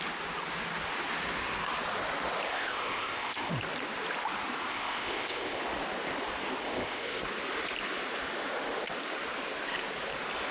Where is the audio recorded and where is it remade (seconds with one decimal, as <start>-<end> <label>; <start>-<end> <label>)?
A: 0.0-2.5 recorded; 2.5-3.5 remade; 3.5-4.7 recorded; 4.7-5.6 remade; 5.6-6.6 recorded; 6.6-7.2 remade; 7.2-10.5 recorded